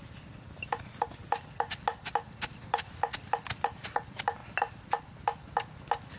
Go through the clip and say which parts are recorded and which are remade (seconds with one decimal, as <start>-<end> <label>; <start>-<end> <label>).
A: 0.0-6.2 recorded